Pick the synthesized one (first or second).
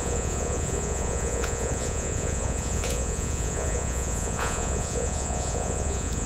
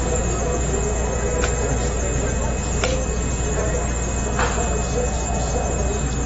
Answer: first